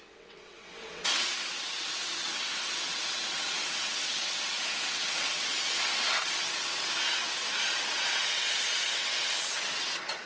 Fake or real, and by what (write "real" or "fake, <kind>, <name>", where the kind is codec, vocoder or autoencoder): fake, vocoder, WaveNeXt